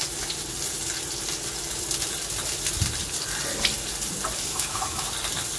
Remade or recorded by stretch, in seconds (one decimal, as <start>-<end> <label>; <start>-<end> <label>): 0.0-4.5 recorded; 4.5-5.1 remade; 5.1-5.6 recorded